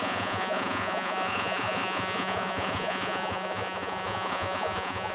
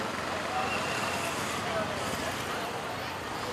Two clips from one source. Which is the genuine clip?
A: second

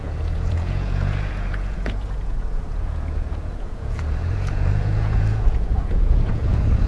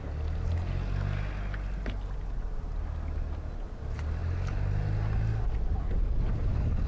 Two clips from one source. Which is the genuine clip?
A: second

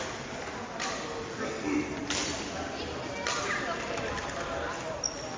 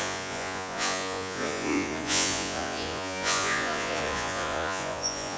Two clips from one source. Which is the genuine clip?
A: first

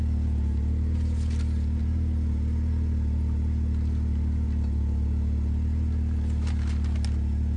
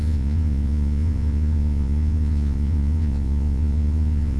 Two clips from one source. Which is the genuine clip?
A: first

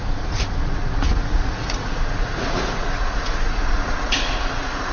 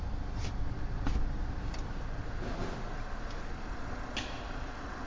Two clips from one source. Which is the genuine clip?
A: second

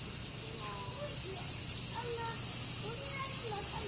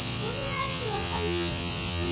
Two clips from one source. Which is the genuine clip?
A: first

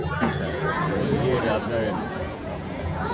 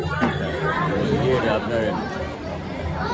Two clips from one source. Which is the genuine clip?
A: second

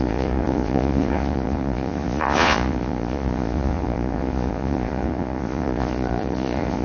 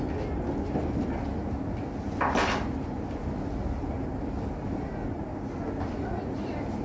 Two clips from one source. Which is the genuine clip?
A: second